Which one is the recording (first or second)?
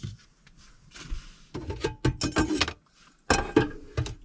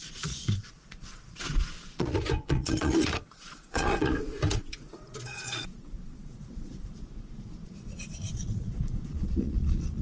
first